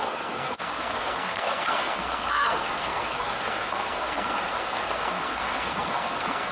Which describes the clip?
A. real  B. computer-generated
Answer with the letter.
B